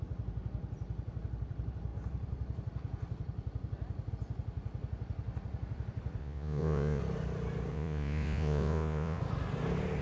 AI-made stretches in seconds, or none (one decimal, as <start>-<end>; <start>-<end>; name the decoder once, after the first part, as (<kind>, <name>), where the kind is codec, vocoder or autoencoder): 6.2-7.0 (vocoder, Vocos); 7.7-9.2